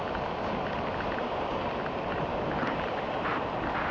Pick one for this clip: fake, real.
real